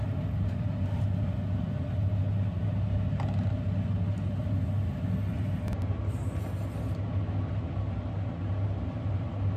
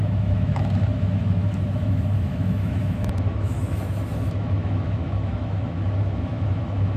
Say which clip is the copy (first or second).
second